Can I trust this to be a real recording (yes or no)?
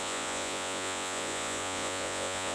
no